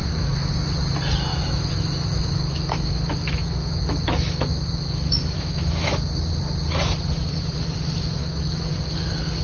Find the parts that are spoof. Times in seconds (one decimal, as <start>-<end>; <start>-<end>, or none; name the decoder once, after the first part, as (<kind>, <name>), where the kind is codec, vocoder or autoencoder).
0.0-0.5 (autoencoder, DAC-VAE); 1.3-5.9; 8.2-8.7